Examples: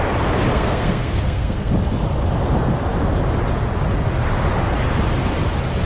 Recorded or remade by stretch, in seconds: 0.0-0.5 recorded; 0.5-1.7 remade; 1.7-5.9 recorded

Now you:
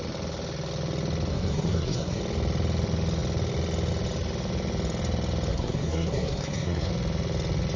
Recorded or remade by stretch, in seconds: 0.0-1.3 recorded; 1.3-2.2 remade; 2.2-5.5 recorded; 5.5-6.9 remade; 6.9-7.8 recorded